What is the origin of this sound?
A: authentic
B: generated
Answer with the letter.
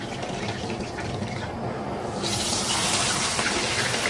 A